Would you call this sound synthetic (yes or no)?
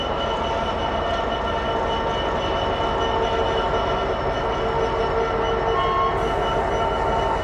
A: no